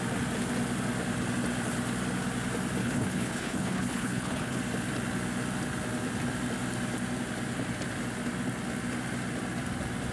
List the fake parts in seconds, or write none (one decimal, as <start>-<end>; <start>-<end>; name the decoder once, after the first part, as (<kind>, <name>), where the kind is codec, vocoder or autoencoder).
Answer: 2.8-4.6 (codec, HILCodec)

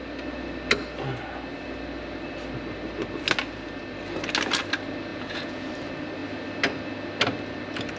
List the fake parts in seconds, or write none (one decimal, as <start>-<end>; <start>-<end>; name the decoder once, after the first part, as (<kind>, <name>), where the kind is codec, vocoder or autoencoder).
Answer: 5.1-5.7 (vocoder, Vocos)

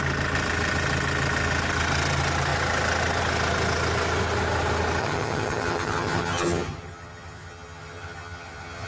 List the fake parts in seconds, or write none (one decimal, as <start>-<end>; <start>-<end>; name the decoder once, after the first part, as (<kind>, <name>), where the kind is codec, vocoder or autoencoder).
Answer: 5.0-8.9 (vocoder, HiFi-GAN)

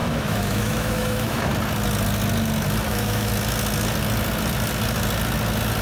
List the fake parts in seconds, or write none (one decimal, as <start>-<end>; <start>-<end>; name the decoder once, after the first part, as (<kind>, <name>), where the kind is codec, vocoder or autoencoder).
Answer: 0.0-1.5 (autoencoder, DAC-VAE); 2.9-3.3

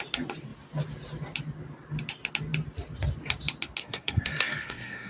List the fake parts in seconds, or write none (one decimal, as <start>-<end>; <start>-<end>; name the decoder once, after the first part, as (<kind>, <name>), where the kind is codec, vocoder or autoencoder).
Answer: 3.8-5.1 (codec, SNAC)